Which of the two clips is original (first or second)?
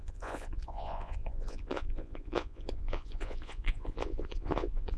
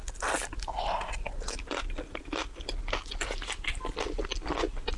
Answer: second